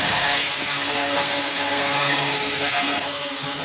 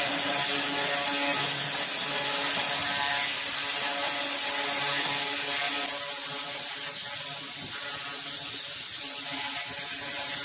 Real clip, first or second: second